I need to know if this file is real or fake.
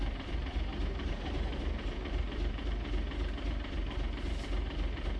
fake